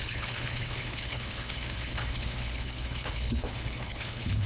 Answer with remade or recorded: remade